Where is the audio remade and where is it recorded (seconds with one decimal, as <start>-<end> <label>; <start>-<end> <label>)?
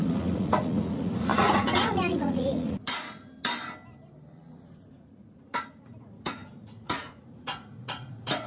0.0-3.3 remade; 3.3-4.5 recorded; 4.5-8.5 remade